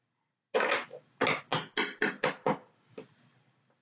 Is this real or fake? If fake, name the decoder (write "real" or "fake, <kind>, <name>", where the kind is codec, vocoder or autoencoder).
real